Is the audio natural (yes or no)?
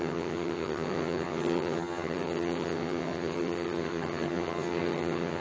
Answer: no